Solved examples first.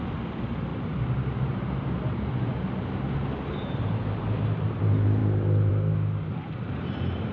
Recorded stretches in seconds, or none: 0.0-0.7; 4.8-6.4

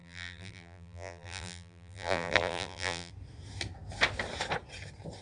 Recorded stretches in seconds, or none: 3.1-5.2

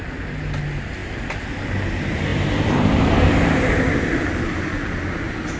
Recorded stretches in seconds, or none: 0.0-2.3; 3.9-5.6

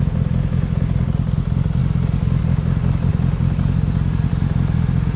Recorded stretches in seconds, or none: 0.0-5.2

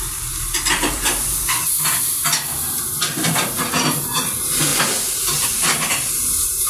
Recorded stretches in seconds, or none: none

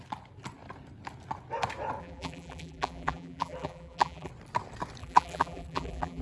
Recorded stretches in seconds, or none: 0.0-2.0; 4.3-5.0